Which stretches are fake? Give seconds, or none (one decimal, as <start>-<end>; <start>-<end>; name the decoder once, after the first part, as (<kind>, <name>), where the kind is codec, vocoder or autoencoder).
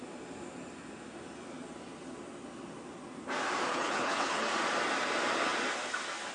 3.7-4.5 (codec, HILCodec)